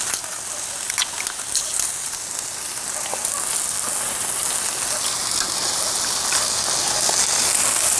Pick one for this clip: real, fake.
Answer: real